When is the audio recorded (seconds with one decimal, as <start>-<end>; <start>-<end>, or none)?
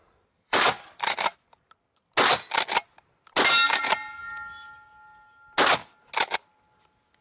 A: 1.7-7.2